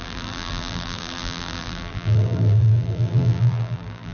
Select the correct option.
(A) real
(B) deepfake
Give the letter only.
B